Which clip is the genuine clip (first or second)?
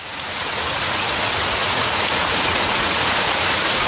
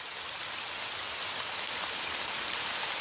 second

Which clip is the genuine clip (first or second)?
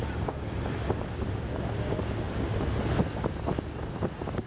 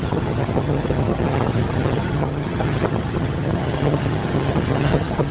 first